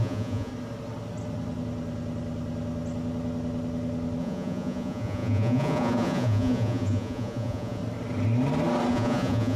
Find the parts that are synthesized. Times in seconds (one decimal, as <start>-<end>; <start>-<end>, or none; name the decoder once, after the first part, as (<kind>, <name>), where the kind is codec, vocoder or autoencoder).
0.0-0.5 (vocoder, Vocos); 4.2-7.8; 8.9-9.6